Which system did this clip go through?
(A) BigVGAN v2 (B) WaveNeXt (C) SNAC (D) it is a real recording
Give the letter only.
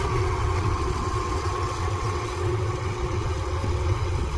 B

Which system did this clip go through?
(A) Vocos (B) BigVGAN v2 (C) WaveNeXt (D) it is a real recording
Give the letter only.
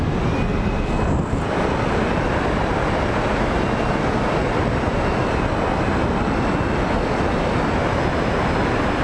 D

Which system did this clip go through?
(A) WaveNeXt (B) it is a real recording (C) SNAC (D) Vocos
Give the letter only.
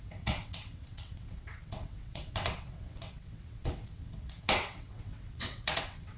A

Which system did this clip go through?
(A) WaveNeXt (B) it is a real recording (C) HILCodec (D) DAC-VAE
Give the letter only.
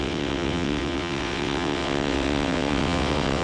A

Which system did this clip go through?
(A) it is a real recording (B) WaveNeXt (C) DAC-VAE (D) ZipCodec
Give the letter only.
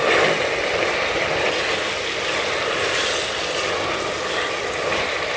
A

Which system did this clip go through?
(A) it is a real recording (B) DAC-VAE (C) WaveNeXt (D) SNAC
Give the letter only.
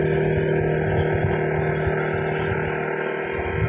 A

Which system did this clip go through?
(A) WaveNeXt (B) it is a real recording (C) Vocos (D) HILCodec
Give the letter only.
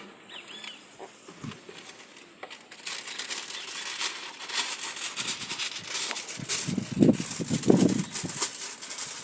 B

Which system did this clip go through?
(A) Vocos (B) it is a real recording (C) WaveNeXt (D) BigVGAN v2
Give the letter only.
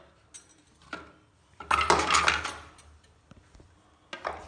B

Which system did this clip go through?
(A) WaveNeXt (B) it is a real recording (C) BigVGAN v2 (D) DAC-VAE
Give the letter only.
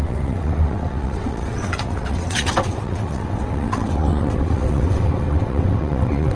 A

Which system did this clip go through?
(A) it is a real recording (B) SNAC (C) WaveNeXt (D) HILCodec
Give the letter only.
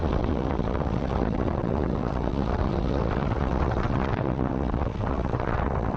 C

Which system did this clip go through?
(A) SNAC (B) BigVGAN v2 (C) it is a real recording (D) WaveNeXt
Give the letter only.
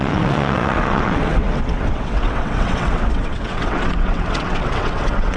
D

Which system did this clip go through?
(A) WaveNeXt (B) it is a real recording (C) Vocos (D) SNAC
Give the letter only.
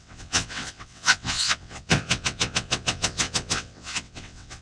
A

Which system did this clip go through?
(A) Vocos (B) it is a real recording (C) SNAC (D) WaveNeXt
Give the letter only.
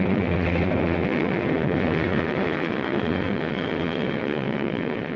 D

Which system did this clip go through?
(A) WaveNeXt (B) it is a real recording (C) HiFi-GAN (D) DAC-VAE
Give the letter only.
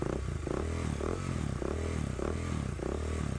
B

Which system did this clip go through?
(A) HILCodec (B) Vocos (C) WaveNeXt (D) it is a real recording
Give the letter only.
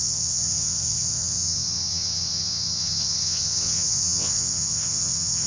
C